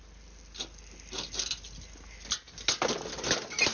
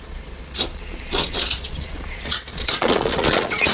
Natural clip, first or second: first